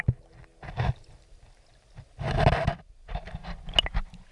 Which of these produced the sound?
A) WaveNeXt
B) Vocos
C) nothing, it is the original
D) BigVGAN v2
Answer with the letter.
C